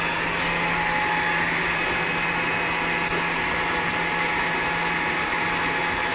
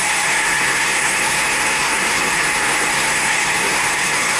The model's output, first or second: second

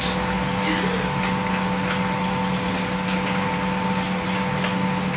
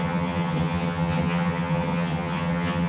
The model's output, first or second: second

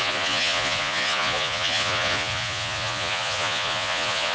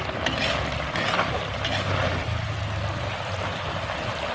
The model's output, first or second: first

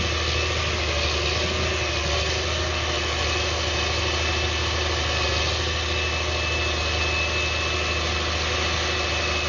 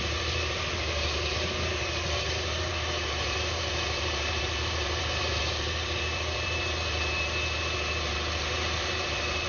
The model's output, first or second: second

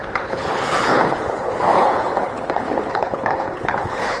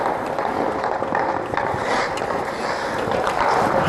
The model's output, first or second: first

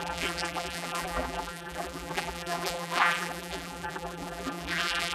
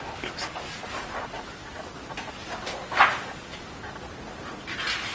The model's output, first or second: first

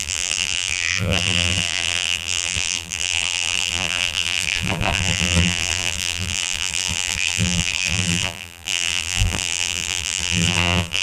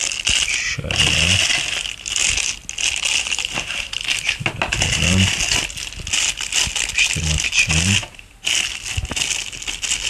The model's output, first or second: first